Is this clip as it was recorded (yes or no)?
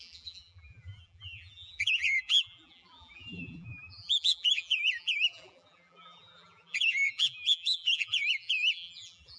no